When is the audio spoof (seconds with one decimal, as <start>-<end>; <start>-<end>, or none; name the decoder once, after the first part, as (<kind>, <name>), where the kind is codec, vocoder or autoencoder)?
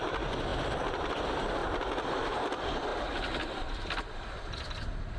none